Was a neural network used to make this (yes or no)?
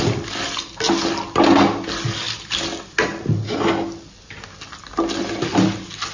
no